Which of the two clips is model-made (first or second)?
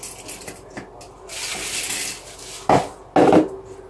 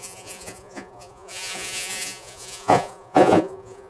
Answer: second